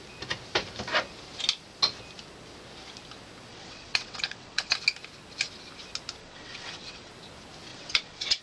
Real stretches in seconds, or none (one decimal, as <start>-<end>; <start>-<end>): 0.0-3.5; 4.7-6.2; 7.1-7.7